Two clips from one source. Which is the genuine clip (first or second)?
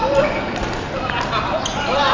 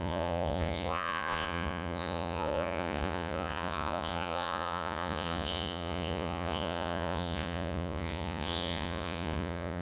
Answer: first